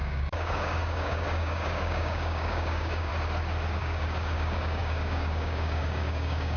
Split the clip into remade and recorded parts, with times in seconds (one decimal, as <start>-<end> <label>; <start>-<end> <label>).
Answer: 0.0-3.1 remade; 3.1-3.8 recorded; 3.8-6.6 remade